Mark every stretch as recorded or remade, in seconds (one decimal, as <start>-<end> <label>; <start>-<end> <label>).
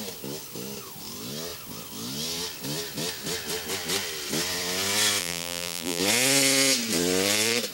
0.0-5.2 recorded; 5.2-6.0 remade; 6.0-7.7 recorded